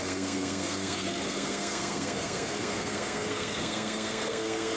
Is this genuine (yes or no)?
no